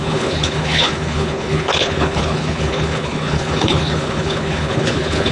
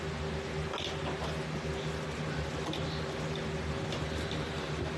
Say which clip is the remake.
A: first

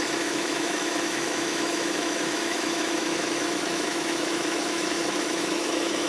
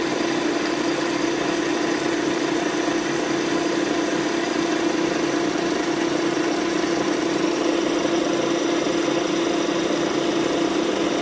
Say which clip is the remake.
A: first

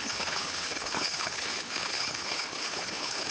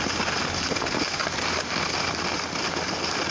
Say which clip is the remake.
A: first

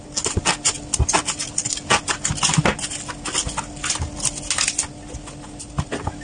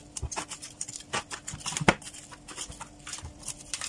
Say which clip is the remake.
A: second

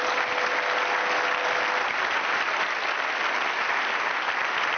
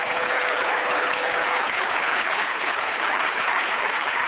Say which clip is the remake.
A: second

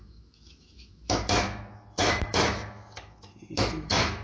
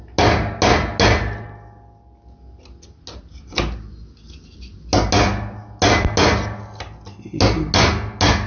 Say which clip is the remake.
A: first